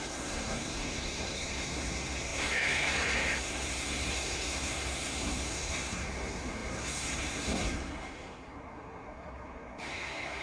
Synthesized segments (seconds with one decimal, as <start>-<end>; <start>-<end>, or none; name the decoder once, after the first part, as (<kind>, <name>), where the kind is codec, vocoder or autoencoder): 0.0-10.4 (codec, SNAC)

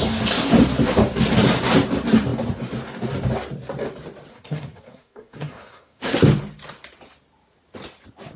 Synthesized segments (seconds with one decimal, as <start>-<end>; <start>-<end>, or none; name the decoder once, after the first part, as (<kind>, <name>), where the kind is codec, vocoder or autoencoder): 4.3-6.2 (codec, SNAC)

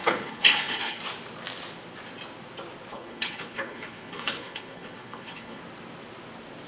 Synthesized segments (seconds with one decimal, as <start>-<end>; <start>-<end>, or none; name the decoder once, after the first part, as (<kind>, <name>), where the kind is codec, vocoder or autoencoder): 0.0-1.0 (codec, HILCodec); 2.9-5.6

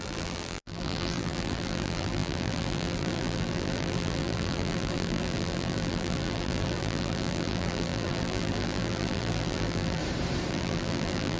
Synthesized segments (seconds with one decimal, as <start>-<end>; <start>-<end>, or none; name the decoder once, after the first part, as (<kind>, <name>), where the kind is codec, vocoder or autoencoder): 0.0-10.0 (vocoder, BigVGAN v2); 10.5-11.4

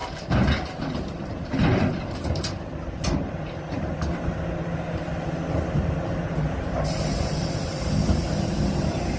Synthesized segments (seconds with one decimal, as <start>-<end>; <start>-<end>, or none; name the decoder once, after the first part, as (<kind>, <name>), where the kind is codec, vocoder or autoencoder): none

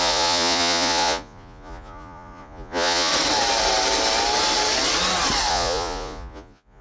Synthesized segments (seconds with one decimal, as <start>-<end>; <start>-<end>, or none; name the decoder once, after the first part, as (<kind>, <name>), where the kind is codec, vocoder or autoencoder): 0.0-3.1 (vocoder, Vocos); 5.5-6.8

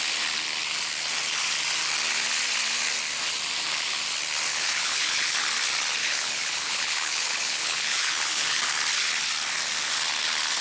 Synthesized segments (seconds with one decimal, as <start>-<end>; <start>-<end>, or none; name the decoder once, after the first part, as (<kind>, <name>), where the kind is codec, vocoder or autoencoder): 4.5-5.4 (codec, HILCodec); 6.0-8.6

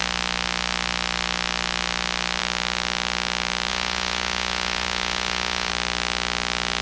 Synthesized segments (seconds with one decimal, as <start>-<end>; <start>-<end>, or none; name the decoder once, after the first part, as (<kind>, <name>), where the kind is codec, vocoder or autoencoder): 3.7-5.7 (vocoder, Vocos)